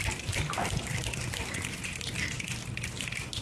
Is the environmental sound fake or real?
real